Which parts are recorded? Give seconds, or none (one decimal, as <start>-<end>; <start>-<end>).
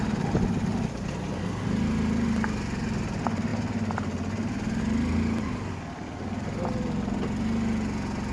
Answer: 0.0-8.3